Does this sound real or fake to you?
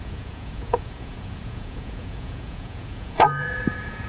fake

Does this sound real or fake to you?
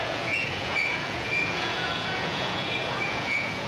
fake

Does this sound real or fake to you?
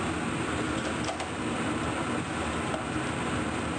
real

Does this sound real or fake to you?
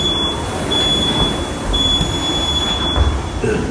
real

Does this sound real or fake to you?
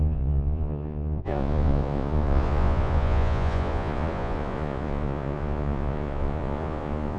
fake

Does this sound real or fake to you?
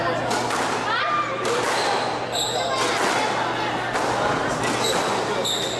real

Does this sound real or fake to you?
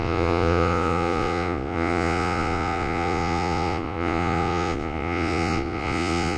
fake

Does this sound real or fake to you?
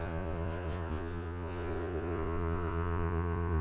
fake